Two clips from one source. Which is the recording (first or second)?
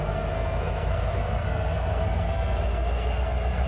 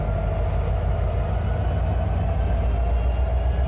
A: second